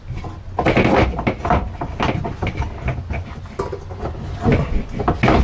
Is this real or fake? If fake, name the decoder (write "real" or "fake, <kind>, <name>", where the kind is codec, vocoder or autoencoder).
real